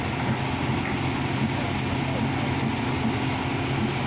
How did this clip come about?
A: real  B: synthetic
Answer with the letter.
A